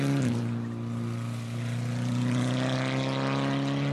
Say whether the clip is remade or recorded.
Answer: recorded